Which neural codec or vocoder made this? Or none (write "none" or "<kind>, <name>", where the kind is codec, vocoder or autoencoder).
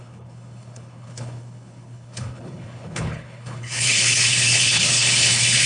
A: codec, HILCodec